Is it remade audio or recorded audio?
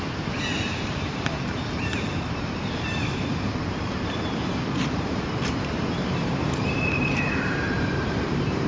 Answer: remade